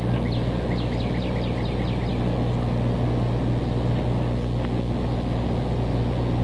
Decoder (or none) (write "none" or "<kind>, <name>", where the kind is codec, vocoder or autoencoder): none